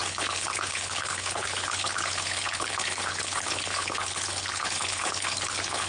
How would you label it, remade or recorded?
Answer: remade